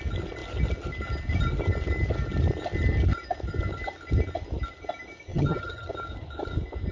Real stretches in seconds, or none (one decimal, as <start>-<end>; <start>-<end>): 0.0-5.3; 5.9-6.9